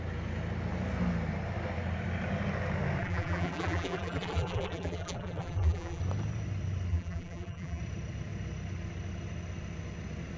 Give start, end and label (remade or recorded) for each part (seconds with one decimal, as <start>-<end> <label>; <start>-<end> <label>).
0.0-3.0 recorded; 3.0-6.0 remade; 6.0-6.9 recorded; 6.9-7.8 remade; 7.8-10.4 recorded